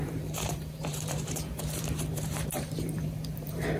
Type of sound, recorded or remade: remade